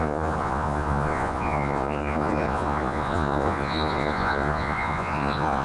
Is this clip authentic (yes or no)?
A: no